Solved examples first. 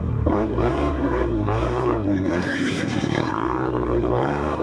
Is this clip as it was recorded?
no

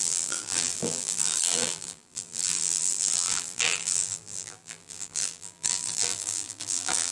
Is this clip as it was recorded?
no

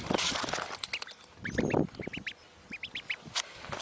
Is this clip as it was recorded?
yes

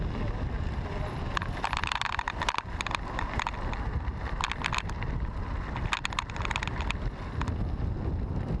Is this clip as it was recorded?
yes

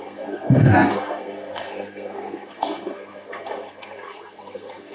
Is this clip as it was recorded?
no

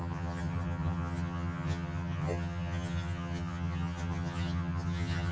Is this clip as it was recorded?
no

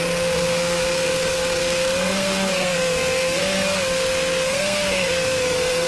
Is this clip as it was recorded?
no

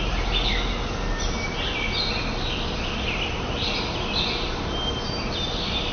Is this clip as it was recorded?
yes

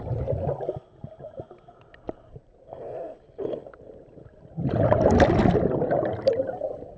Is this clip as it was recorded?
yes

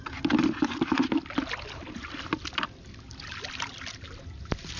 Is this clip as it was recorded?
yes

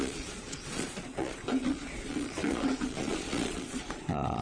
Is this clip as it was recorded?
no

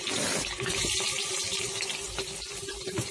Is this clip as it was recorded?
yes